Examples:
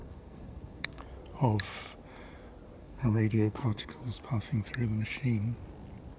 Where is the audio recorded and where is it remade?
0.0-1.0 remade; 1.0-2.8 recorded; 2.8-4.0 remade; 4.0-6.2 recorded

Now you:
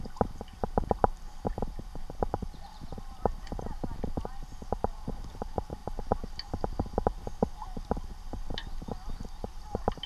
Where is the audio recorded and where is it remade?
0.0-10.1 recorded

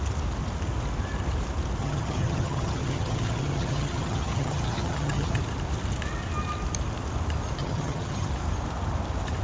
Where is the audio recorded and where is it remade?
0.0-1.8 recorded; 1.8-5.4 remade; 5.4-7.6 recorded; 7.6-8.3 remade; 8.3-9.4 recorded

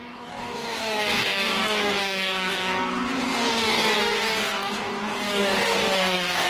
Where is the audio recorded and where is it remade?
0.0-6.5 remade

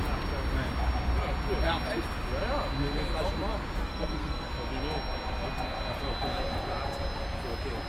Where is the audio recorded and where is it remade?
0.0-3.8 recorded; 3.8-4.5 remade; 4.5-7.9 recorded

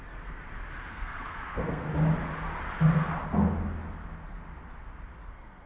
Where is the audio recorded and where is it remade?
0.0-0.4 remade; 0.4-0.9 recorded; 0.9-1.9 remade; 1.9-5.3 recorded; 5.3-5.7 remade

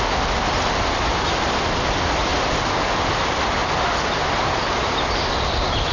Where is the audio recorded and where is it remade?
0.0-5.9 recorded

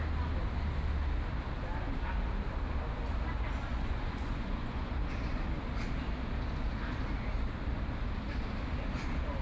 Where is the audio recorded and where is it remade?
0.0-3.7 recorded; 3.7-4.9 remade; 4.9-9.4 recorded